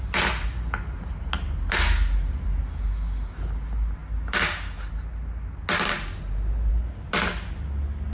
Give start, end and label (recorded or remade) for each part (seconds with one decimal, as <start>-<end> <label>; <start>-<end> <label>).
0.0-8.1 recorded